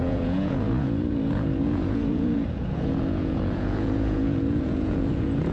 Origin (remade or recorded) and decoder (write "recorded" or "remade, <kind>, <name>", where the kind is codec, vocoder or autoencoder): remade, vocoder, Vocos